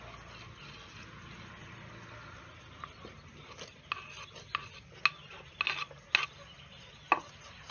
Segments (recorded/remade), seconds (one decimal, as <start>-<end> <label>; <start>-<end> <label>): 0.0-7.7 recorded